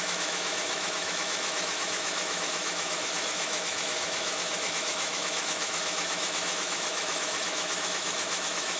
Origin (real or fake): fake